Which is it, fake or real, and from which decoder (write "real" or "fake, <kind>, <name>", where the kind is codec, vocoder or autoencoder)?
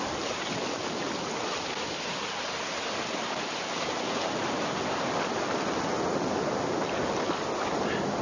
real